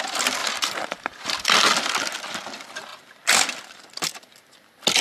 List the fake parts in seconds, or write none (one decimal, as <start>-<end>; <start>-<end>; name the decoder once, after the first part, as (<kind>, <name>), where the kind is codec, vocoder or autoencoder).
0.4-1.3 (vocoder, BigVGAN v2)